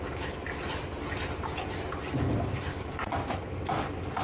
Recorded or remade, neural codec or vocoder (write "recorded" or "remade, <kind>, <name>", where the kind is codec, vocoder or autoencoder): recorded